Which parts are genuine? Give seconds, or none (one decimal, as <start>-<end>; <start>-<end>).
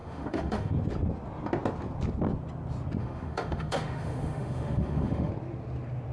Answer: 0.7-3.0; 5.3-6.1